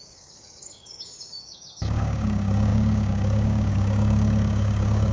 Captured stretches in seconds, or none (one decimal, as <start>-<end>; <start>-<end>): none